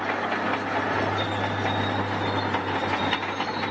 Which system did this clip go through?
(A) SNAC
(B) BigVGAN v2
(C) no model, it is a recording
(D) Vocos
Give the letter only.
C